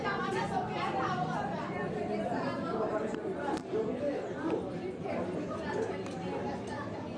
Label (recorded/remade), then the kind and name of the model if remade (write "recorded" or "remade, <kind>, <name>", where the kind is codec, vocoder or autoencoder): remade, vocoder, BigVGAN v2